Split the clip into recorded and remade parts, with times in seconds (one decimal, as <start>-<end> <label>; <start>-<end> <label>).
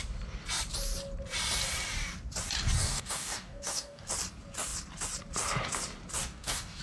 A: 0.0-2.8 recorded; 2.8-4.1 remade; 4.1-6.2 recorded; 6.2-6.8 remade